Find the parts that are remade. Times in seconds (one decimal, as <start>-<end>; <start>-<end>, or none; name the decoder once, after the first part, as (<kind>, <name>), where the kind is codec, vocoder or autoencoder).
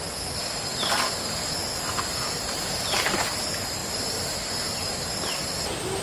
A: none